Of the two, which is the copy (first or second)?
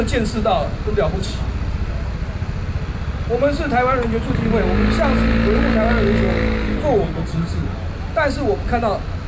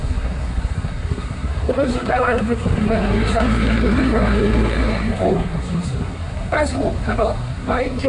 second